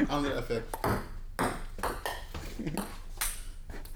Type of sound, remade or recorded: recorded